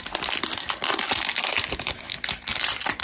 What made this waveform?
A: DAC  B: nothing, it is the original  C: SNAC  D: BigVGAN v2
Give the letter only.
B